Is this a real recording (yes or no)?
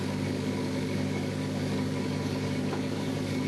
no